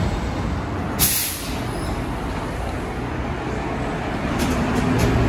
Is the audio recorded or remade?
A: recorded